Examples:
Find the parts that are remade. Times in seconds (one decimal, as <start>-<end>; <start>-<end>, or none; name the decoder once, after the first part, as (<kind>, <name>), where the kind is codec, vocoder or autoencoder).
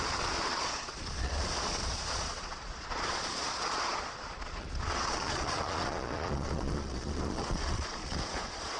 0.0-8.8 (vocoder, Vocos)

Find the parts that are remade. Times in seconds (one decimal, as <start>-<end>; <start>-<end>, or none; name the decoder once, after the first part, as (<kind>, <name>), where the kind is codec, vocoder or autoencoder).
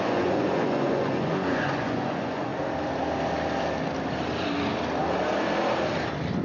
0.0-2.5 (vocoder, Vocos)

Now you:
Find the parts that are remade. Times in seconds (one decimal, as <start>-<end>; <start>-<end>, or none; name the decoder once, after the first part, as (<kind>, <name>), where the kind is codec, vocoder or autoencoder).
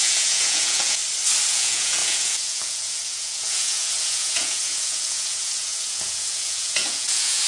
0.0-1.0 (vocoder, Vocos); 1.5-7.5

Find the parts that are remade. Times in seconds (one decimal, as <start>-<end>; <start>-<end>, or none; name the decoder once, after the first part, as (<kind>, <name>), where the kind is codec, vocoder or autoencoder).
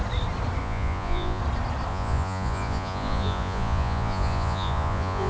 0.6-1.4 (vocoder, Vocos); 1.9-5.3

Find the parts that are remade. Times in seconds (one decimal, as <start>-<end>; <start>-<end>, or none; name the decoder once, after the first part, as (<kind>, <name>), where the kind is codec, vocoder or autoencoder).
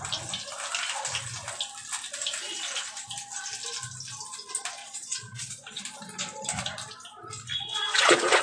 4.8-5.8 (vocoder, Vocos); 7.5-8.4